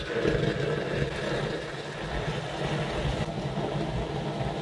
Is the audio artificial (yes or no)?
no